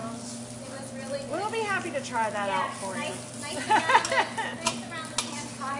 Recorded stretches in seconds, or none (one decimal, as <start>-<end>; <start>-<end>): 0.0-5.8